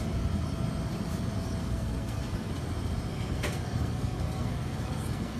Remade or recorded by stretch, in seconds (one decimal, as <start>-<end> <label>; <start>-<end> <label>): 0.0-1.6 recorded; 1.6-2.5 remade; 2.5-3.1 recorded; 3.1-5.4 remade